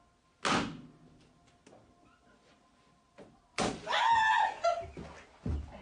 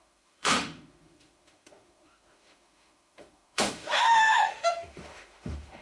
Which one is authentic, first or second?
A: first